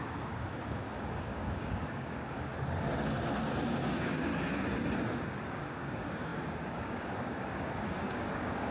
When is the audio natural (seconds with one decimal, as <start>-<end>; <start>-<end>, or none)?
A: 2.5-3.7; 4.3-5.5